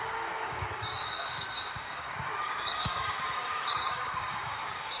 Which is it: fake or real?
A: fake